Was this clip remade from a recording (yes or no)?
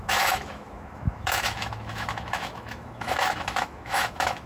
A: yes